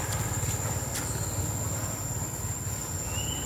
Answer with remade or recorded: recorded